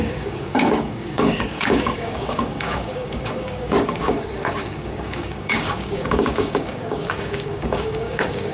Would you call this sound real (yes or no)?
no